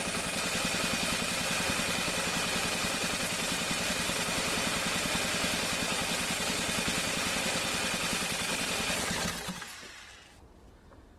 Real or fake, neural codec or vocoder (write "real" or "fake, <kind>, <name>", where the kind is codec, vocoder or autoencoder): real